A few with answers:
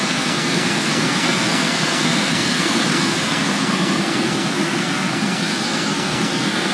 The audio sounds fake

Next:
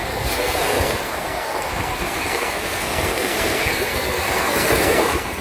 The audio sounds fake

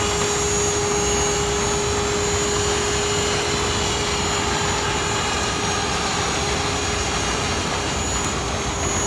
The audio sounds real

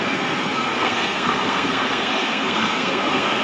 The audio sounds fake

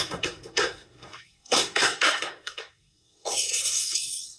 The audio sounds fake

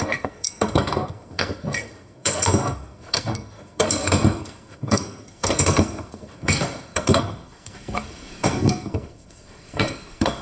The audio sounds fake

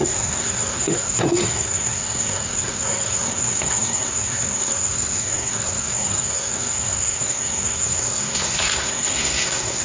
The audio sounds fake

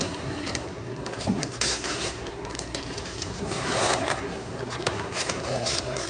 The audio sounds fake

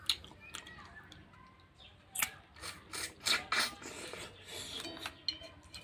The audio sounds real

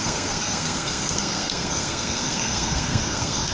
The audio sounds fake